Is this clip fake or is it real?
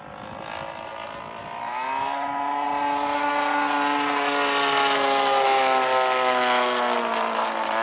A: real